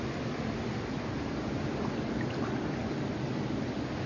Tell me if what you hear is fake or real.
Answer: real